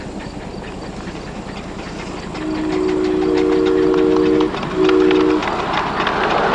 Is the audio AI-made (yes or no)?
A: no